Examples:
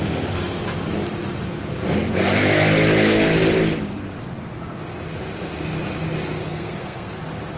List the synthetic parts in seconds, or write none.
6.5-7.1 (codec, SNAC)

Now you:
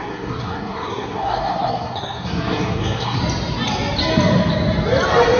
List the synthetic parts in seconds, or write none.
0.0-3.2 (codec, SNAC)